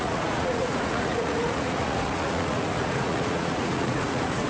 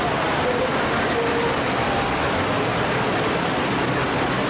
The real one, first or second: second